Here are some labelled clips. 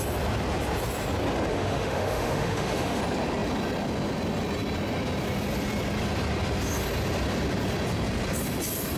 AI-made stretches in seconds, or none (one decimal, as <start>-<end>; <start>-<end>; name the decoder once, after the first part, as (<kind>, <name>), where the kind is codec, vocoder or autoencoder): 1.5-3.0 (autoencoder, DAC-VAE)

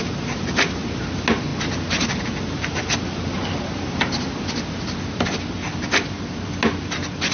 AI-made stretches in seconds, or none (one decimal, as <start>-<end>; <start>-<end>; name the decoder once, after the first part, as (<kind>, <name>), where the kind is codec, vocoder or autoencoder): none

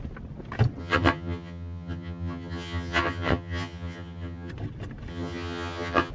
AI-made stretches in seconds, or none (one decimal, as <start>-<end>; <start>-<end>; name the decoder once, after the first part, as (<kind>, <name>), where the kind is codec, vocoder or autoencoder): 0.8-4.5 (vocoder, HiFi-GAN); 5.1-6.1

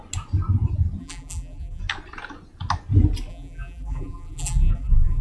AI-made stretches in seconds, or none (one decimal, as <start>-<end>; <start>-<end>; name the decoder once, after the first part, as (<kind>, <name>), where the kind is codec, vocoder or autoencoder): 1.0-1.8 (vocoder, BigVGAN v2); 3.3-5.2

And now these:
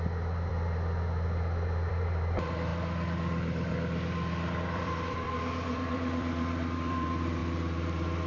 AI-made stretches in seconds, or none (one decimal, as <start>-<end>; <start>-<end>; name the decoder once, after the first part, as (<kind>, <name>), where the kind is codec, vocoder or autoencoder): 0.0-0.5 (vocoder, BigVGAN v2); 1.9-2.7; 4.5-8.3